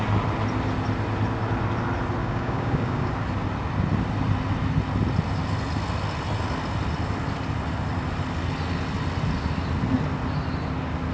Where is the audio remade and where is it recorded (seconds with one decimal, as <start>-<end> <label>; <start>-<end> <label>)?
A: 0.0-2.2 recorded; 2.2-3.1 remade; 3.1-11.1 recorded